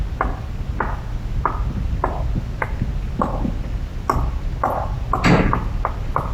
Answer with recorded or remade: recorded